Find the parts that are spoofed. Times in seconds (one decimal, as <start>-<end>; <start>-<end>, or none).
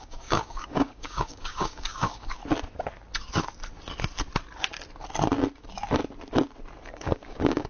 0.0-2.4; 6.9-7.7